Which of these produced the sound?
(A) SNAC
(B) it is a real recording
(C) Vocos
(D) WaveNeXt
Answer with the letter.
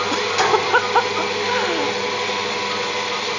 B